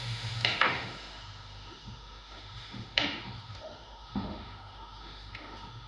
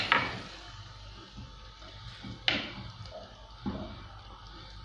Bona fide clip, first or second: second